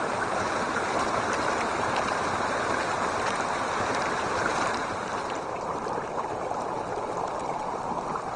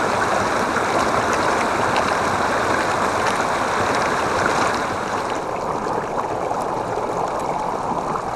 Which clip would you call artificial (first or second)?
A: first